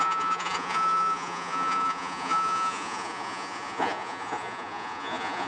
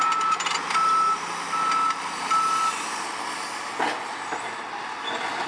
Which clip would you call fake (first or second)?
first